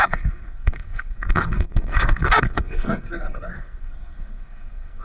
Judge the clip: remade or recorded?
remade